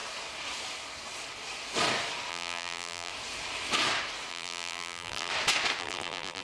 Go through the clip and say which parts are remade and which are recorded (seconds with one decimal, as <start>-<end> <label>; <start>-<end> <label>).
0.0-2.3 recorded; 2.3-3.1 remade; 3.1-4.3 recorded; 4.3-5.3 remade; 5.3-5.8 recorded; 5.8-6.4 remade

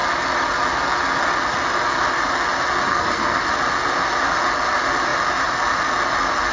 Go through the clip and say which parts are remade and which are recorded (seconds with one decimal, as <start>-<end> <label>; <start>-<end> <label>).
0.0-2.9 recorded; 2.9-3.4 remade; 3.4-6.5 recorded

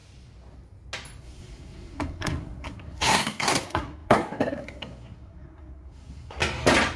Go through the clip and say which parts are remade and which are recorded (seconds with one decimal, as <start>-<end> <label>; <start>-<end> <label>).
0.0-1.2 recorded; 1.2-6.4 remade; 6.4-7.0 recorded

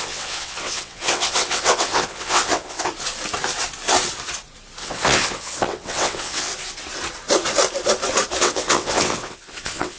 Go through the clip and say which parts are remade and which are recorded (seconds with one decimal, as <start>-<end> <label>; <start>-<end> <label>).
0.0-2.9 remade; 2.9-4.8 recorded; 4.8-6.5 remade; 6.5-8.4 recorded; 8.4-10.0 remade

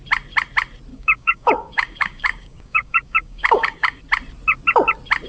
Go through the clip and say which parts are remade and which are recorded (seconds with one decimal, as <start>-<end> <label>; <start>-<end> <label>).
0.0-0.9 recorded; 0.9-4.0 remade; 4.0-5.3 recorded

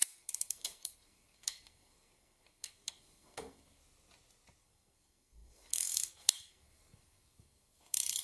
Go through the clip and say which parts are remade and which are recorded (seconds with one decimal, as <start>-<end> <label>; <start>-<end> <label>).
0.0-3.8 remade; 3.8-4.6 recorded; 4.6-8.2 remade

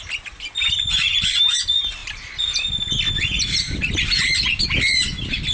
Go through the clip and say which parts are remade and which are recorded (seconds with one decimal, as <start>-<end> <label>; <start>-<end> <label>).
0.0-5.5 recorded

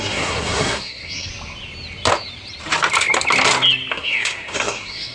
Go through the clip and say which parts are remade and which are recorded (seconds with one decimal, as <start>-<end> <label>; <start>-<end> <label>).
0.0-1.3 remade; 1.3-3.9 recorded; 3.9-5.1 remade